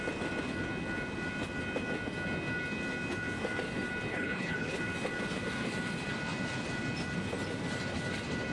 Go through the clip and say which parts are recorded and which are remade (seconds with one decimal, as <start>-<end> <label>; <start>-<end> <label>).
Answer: 0.0-4.1 recorded; 4.1-4.8 remade; 4.8-8.5 recorded